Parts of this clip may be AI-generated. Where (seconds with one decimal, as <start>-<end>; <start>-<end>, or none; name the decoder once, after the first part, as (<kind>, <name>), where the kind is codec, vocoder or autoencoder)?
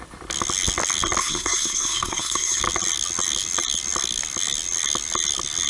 1.2-2.6 (codec, SNAC)